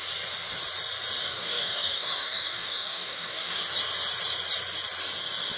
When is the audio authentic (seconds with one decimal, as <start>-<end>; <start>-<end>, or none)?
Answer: 0.0-1.2; 3.6-5.6